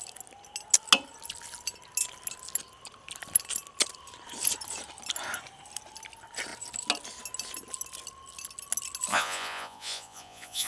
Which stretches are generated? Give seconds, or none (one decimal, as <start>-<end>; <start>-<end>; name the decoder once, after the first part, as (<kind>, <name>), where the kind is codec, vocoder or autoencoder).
9.1-10.7 (vocoder, Vocos)